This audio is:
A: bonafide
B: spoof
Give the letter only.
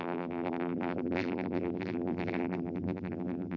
B